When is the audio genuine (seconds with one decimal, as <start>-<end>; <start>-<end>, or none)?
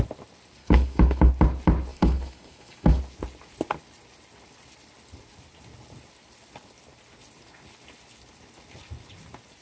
0.0-0.6; 1.3-1.9; 3.0-9.6